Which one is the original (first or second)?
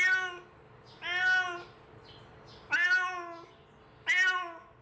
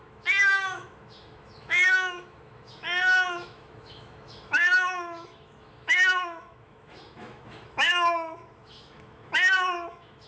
first